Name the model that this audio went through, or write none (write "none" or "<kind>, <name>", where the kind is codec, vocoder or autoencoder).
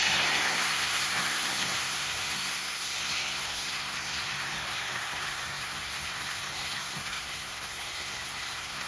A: codec, SNAC